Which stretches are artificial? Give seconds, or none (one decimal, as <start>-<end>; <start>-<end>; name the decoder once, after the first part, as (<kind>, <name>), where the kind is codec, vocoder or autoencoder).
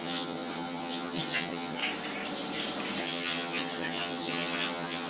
0.0-1.8 (vocoder, HiFi-GAN); 3.0-5.1